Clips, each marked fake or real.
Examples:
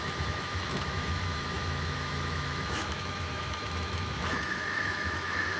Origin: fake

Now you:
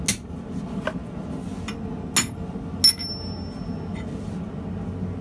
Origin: real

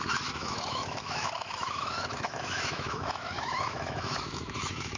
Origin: fake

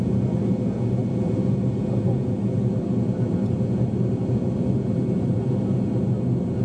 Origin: real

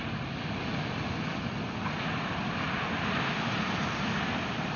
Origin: real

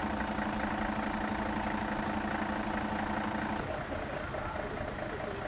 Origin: real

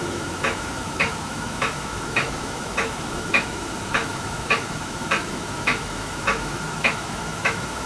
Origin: fake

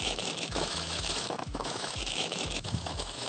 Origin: fake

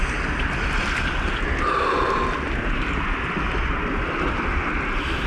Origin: real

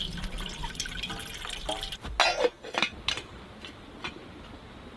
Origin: real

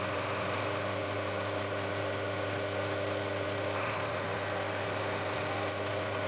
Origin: real